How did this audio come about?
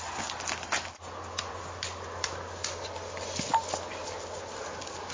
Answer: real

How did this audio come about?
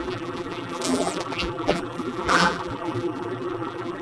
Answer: fake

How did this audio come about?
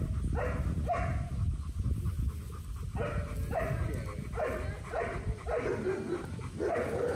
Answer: real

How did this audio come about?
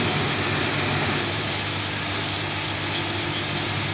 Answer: real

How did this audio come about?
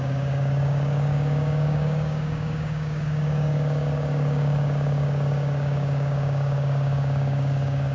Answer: fake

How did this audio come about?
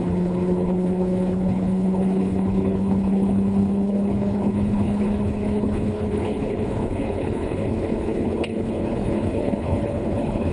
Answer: fake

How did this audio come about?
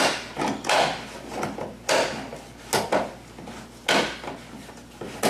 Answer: real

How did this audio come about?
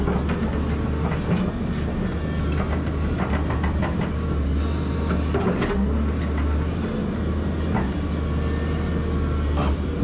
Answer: real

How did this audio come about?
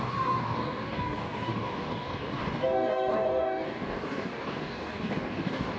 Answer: fake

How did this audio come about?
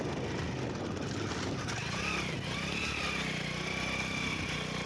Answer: real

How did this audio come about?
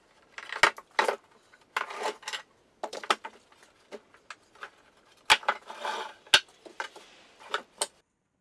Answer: real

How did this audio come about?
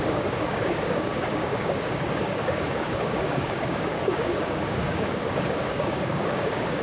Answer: fake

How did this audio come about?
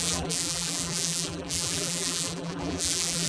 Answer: fake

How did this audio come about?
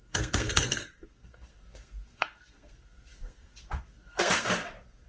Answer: fake